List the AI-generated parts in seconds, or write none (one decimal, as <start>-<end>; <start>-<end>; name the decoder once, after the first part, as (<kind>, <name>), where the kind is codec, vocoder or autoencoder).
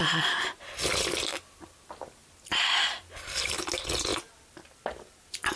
none